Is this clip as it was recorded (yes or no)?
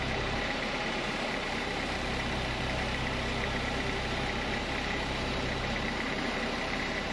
no